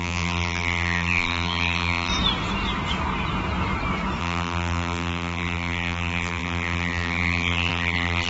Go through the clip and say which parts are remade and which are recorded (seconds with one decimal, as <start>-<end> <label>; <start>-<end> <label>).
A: 0.0-2.1 remade; 2.1-4.2 recorded; 4.2-8.3 remade